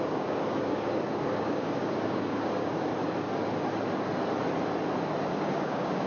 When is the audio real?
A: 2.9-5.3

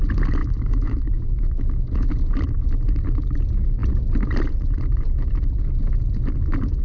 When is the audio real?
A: 0.0-0.4; 2.1-6.8

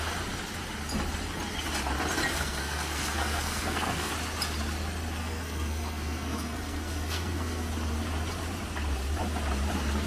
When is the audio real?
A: 0.0-2.3; 4.1-5.2; 7.7-10.1